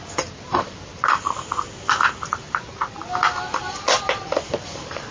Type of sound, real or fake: real